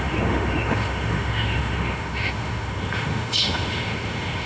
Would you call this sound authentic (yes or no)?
no